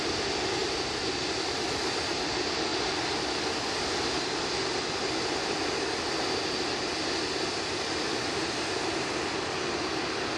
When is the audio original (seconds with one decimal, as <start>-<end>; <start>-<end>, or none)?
0.0-10.4